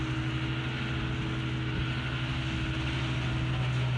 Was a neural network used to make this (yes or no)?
no